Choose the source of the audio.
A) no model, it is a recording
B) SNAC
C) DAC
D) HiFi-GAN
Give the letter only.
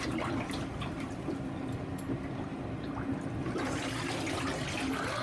A